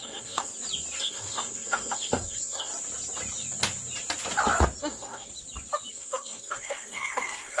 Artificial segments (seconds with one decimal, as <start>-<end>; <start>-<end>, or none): 0.0-0.5; 1.0-2.7; 4.8-5.3; 5.9-7.6